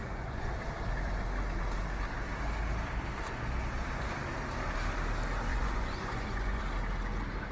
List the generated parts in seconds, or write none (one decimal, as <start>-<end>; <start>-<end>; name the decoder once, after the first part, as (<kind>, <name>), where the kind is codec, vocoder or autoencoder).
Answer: 0.0-0.5 (vocoder, Vocos); 5.5-6.6